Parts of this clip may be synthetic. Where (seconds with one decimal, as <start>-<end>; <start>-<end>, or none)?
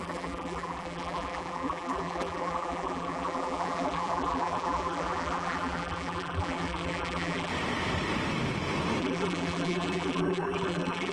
0.0-7.5; 9.0-11.1